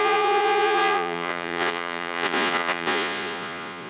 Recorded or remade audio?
remade